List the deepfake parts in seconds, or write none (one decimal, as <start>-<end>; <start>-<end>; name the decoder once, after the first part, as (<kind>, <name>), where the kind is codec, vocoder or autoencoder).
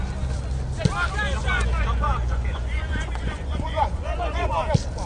1.4-4.5 (vocoder, Vocos)